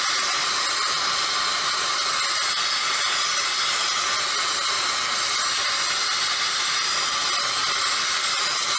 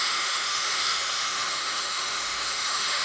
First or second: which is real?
first